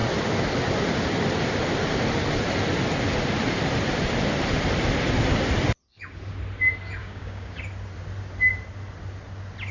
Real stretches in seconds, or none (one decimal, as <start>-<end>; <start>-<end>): 0.0-7.0; 7.6-9.7